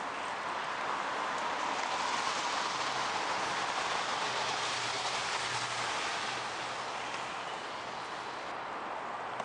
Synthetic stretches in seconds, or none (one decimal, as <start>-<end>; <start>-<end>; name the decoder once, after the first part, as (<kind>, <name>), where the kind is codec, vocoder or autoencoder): 4.1-5.2 (vocoder, BigVGAN v2)